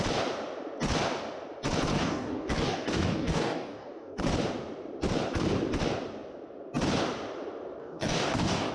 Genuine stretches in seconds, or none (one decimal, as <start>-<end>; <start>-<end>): 0.0-1.9; 4.2-7.8